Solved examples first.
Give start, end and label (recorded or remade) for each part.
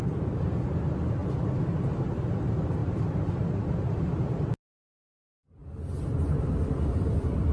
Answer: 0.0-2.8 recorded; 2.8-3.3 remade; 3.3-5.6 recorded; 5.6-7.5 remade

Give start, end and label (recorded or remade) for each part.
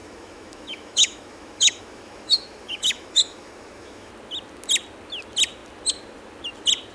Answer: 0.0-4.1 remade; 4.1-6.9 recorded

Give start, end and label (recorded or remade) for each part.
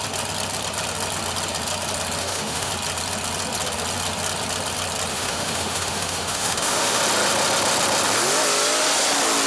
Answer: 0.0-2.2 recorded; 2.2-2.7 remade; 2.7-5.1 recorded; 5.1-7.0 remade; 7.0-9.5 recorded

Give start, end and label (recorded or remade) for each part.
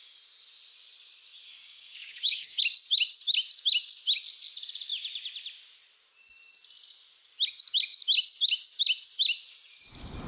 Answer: 0.0-1.5 recorded; 1.5-2.6 remade; 2.6-10.3 recorded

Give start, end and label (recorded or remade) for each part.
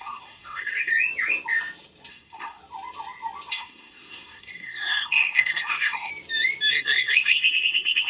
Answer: 0.0-0.9 remade; 0.9-2.1 recorded; 2.1-2.6 remade; 2.6-3.5 recorded; 3.5-6.1 remade; 6.1-6.7 recorded; 6.7-8.1 remade